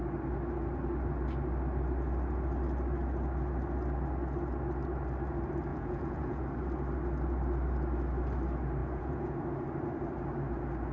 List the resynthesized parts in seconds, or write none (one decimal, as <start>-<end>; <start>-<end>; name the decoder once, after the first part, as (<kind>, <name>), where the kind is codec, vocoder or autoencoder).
5.7-6.4 (vocoder, Vocos); 8.8-9.4